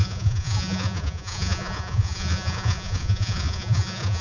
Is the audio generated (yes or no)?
yes